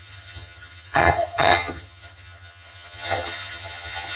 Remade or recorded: remade